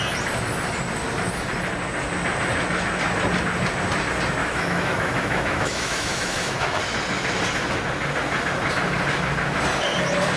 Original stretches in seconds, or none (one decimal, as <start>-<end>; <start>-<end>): 0.0-4.4; 6.8-10.4